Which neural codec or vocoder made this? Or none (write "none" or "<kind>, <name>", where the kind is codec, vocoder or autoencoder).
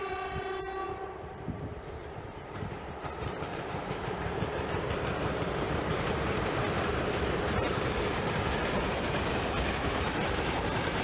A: vocoder, BigVGAN v2